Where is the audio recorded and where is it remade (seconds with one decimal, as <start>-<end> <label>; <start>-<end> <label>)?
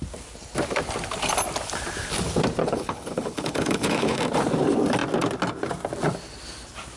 0.0-2.6 recorded; 2.6-4.2 remade; 4.2-7.0 recorded